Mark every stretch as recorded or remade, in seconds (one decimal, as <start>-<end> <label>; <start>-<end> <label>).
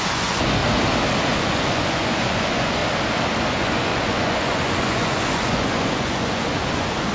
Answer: 0.0-0.6 remade; 0.6-1.3 recorded; 1.3-2.8 remade; 2.8-3.5 recorded; 3.5-7.1 remade